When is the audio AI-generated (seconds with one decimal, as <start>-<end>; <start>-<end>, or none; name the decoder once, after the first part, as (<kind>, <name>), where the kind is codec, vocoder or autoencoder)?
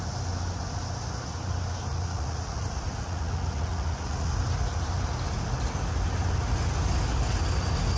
1.9-4.3 (vocoder, Vocos)